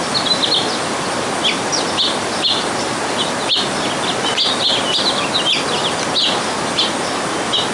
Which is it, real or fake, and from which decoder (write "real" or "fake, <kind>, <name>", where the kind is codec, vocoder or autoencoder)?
real